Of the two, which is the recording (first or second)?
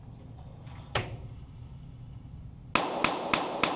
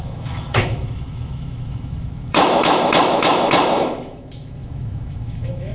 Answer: first